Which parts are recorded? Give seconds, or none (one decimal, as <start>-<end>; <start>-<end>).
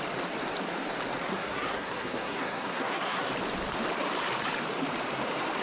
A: 0.0-1.3; 3.3-5.6